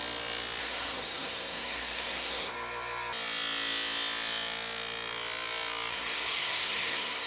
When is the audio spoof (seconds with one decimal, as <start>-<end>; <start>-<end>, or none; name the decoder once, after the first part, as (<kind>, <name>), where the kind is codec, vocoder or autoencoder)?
0.6-2.5 (codec, SNAC); 5.9-7.3